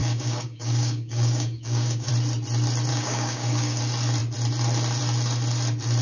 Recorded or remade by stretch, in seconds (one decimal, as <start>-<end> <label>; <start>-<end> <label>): 0.0-2.1 remade; 2.1-2.9 recorded; 2.9-3.8 remade; 3.8-6.0 recorded